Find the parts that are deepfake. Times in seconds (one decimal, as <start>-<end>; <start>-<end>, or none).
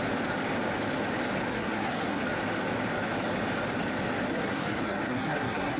1.5-2.2; 4.3-5.8